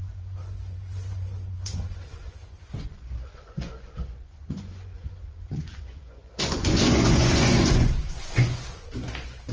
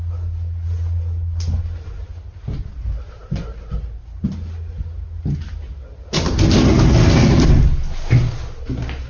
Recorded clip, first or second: second